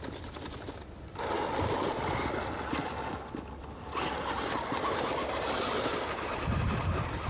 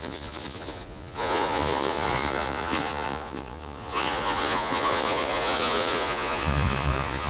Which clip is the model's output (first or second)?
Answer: second